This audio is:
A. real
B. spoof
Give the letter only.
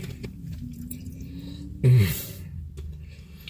A